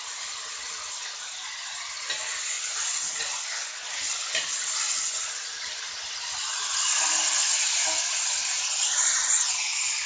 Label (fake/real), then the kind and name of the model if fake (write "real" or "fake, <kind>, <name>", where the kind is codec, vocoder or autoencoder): real